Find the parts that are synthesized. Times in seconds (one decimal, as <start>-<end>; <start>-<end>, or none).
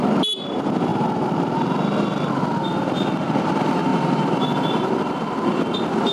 none